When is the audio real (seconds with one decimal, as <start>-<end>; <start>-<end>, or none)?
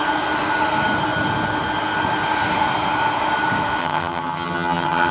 0.0-3.8